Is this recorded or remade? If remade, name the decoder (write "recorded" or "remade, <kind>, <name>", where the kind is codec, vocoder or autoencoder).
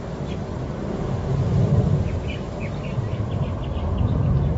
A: recorded